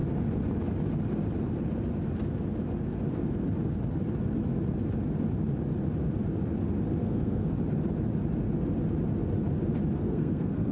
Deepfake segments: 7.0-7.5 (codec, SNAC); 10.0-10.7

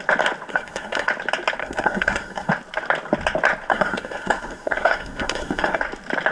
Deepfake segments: 0.5-1.1 (codec, SNAC); 1.6-2.5; 3.7-5.8